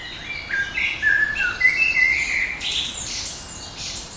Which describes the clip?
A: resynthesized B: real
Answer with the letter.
B